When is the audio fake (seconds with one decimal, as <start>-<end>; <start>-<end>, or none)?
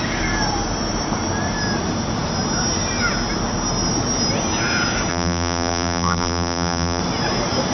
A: 5.1-7.0